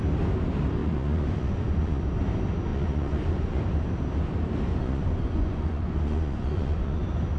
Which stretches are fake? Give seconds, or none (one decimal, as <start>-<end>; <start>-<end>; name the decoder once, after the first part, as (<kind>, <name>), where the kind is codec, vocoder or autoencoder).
0.8-2.0 (vocoder, Vocos); 2.7-3.6; 4.7-7.0